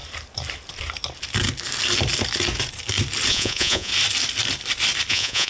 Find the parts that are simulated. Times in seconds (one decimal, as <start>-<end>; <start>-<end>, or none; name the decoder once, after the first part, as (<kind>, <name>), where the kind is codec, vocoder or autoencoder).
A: 3.3-3.9 (vocoder, Vocos); 5.1-5.5